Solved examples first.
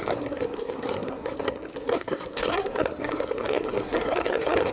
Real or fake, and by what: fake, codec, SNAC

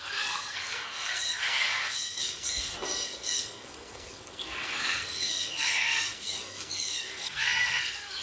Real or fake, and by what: fake, codec, SNAC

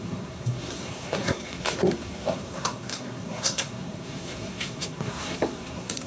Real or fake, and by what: fake, codec, SNAC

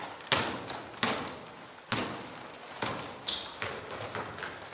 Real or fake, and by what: real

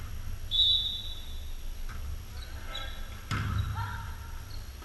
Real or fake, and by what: real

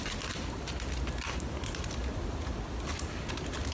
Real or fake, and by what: real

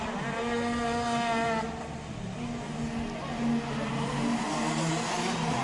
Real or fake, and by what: real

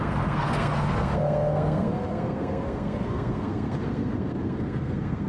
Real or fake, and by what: fake, codec, SNAC